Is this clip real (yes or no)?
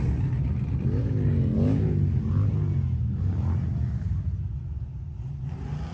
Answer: yes